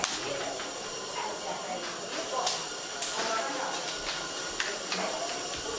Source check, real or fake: real